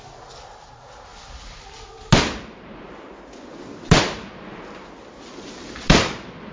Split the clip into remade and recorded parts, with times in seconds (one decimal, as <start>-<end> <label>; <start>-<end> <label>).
0.0-6.5 recorded